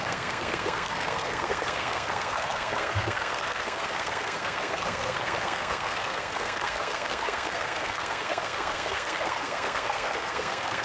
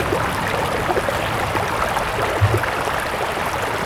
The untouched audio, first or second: second